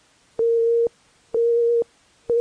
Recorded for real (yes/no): no